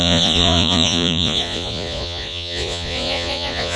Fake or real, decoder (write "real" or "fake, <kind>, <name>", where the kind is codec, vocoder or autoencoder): fake, vocoder, Vocos